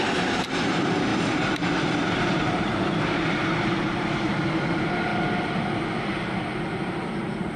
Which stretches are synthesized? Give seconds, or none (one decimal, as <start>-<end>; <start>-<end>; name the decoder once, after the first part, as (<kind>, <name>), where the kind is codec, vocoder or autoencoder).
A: 0.0-5.1 (vocoder, BigVGAN v2); 6.9-7.6